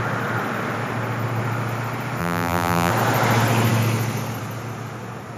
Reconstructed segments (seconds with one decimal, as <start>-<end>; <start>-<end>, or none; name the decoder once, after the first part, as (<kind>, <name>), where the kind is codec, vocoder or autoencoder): 2.2-2.9 (vocoder, BigVGAN v2)